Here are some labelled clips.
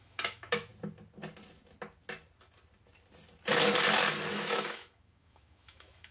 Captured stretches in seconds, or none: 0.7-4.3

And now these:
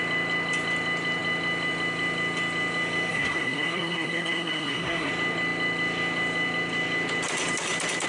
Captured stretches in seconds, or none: 0.0-3.1; 5.1-8.1

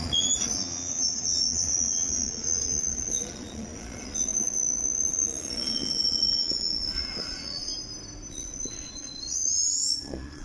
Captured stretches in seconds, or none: 7.7-8.3